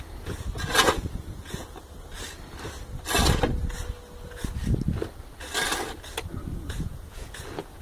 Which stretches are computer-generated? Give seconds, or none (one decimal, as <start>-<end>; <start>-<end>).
0.0-1.8; 6.5-7.8